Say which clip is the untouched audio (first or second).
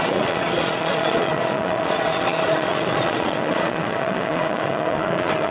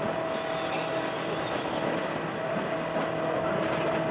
second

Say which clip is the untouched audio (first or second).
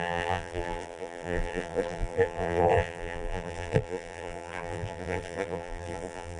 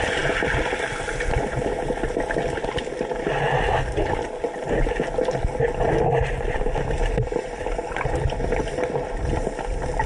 second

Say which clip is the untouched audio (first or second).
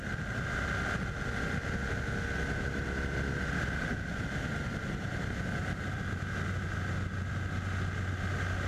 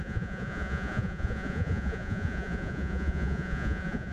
first